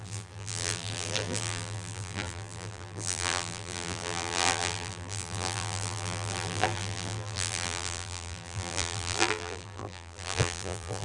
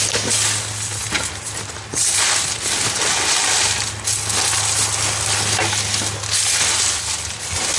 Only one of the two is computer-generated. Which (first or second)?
first